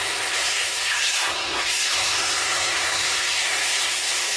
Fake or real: fake